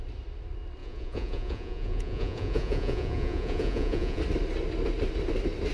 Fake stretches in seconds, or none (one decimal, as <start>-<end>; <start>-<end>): 0.8-4.2